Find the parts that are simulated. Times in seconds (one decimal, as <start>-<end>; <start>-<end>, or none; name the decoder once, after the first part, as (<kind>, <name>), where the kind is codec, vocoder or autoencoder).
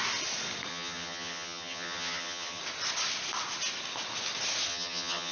0.7-2.6 (vocoder, HiFi-GAN); 4.7-5.3